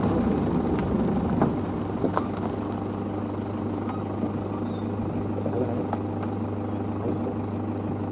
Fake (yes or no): no